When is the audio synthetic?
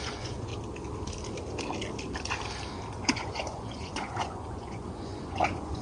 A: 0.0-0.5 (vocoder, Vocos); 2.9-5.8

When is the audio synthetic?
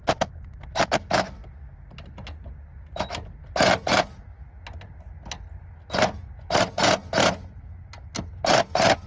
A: none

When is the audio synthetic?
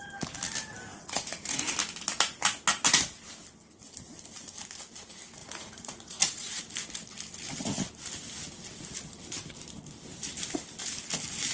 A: 0.9-1.7 (vocoder, Vocos); 5.4-6.6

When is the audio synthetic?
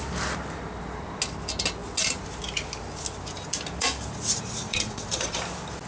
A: 4.7-5.4 (vocoder, Vocos)